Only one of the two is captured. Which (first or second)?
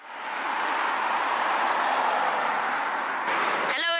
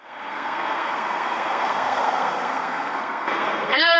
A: first